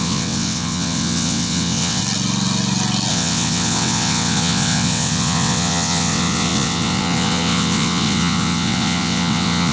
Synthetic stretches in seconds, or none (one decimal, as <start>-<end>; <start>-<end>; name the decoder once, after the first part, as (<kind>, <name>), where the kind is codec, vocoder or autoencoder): 0.0-2.0 (vocoder, WaveNeXt); 3.1-9.7